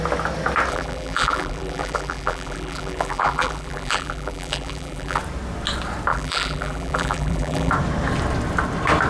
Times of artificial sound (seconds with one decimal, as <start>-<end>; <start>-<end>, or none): 0.7-5.2; 6.1-7.7

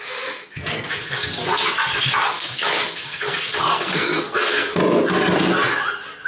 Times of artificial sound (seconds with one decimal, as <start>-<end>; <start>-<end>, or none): 0.0-4.8

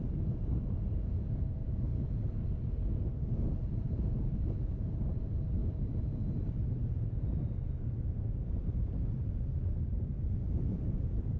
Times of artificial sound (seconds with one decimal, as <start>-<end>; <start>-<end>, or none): 0.0-1.6; 3.3-11.4